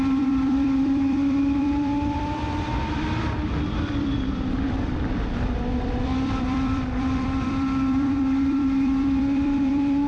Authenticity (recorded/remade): remade